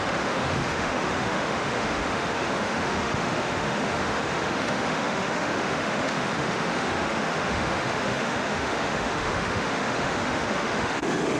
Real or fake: fake